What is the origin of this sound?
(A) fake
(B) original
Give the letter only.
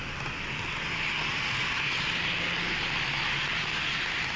B